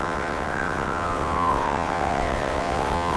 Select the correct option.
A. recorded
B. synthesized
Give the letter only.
B